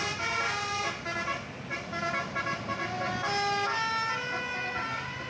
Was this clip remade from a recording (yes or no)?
no